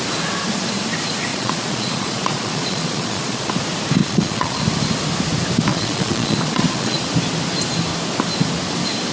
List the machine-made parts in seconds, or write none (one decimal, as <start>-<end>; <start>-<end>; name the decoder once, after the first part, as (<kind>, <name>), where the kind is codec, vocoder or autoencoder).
1.3-3.5 (vocoder, Vocos); 4.0-4.6; 5.7-7.0